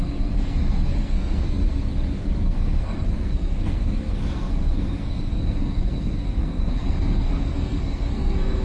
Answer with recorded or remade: remade